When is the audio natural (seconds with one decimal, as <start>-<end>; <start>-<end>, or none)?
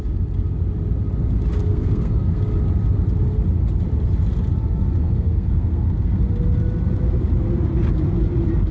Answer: 0.0-1.6; 2.4-5.0; 6.2-8.7